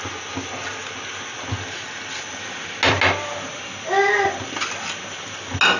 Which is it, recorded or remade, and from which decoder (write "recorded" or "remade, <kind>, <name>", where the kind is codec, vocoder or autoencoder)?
recorded